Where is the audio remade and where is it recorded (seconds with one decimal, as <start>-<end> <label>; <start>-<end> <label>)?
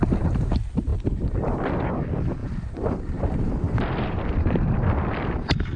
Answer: 0.0-2.4 recorded; 2.4-5.8 remade